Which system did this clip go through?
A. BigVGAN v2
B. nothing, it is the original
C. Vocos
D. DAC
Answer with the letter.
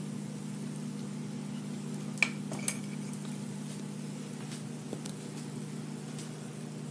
B